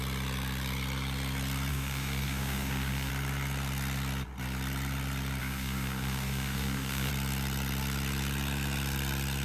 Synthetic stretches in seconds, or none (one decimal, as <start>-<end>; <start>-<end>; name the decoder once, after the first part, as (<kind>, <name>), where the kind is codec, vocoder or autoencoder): 1.7-3.1 (codec, DAC); 5.4-7.1